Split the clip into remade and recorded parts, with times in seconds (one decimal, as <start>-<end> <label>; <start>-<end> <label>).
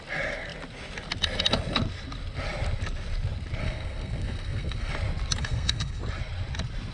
0.0-3.6 recorded; 3.6-4.9 remade; 4.9-5.4 recorded; 5.4-6.0 remade; 6.0-6.9 recorded